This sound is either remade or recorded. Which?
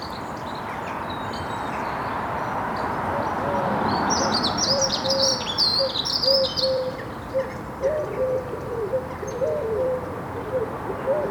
remade